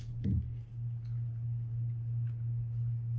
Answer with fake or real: real